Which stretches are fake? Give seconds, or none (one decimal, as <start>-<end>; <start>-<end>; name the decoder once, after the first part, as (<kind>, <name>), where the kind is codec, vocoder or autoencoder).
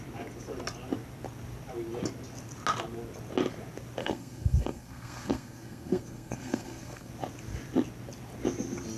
4.0-7.1 (codec, SNAC)